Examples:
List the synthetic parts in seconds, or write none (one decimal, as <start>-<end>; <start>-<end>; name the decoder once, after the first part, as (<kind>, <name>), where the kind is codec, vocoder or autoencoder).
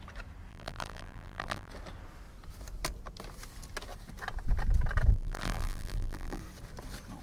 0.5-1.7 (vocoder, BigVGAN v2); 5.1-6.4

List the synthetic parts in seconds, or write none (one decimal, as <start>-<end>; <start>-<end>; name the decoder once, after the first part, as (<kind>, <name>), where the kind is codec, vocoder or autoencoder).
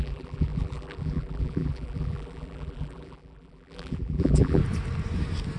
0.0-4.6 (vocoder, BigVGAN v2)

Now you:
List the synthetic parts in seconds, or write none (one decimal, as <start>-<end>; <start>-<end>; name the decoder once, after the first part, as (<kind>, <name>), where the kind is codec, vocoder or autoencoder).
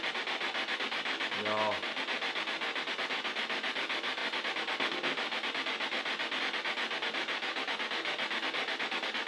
none